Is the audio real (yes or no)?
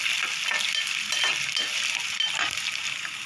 yes